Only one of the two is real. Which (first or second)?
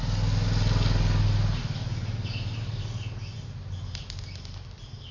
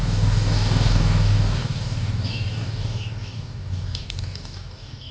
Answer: first